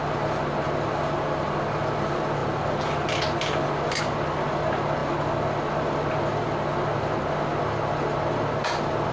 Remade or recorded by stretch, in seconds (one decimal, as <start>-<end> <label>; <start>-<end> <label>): 0.0-9.1 recorded